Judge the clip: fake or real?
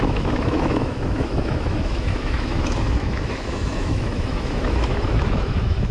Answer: fake